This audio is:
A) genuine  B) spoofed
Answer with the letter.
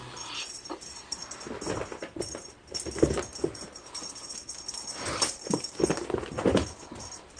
A